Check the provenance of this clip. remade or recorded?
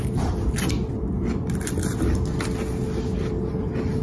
recorded